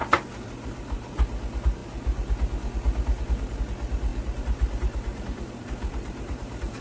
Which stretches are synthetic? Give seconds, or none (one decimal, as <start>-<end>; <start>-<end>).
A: 4.1-6.8